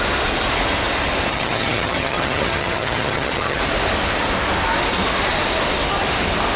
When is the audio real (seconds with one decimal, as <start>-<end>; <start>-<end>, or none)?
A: 0.0-1.3; 3.6-6.6